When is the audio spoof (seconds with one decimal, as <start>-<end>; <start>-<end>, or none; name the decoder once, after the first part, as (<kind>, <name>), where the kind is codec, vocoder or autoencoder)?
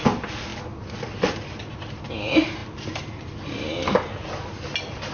none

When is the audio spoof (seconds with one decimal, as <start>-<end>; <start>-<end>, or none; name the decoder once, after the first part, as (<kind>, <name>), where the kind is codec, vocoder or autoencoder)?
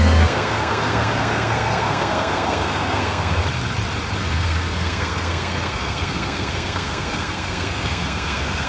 0.0-3.4 (codec, SNAC); 4.2-8.7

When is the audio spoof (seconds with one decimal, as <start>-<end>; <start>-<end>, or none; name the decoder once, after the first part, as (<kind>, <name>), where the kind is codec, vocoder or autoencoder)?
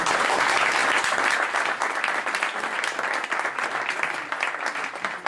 none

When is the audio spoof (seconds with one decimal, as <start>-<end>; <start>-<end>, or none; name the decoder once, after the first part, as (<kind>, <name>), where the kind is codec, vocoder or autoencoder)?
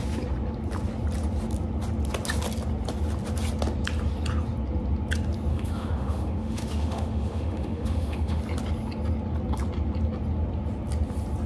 5.5-8.4 (autoencoder, DAC-VAE)